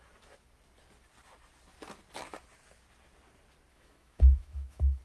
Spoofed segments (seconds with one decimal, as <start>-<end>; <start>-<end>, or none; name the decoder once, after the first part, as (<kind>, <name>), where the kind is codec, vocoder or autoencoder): 3.7-5.0 (autoencoder, DAC-VAE)